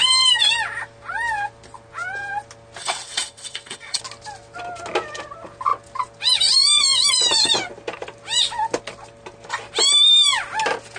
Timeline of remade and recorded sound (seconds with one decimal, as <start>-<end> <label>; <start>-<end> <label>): 0.0-2.8 recorded; 2.8-4.0 remade; 4.0-11.0 recorded